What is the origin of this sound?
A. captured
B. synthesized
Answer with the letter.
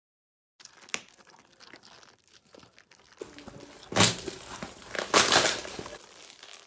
A